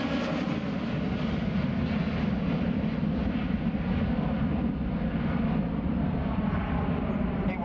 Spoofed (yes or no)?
no